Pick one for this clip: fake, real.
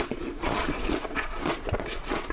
fake